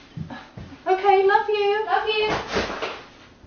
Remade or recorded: recorded